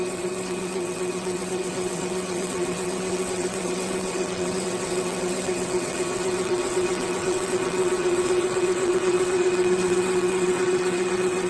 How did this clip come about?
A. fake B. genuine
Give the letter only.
A